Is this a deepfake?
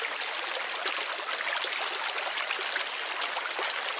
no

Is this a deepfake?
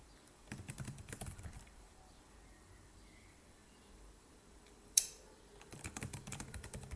yes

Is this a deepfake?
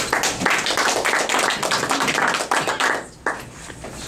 no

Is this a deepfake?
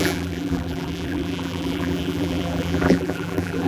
yes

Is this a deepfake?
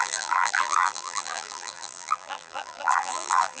yes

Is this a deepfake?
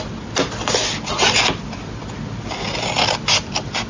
no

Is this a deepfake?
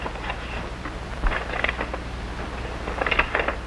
no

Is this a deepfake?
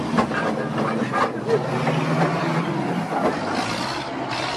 no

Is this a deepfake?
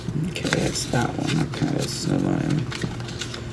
no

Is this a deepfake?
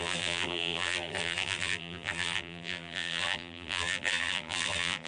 yes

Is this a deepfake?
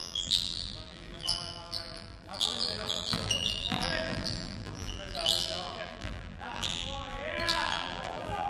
yes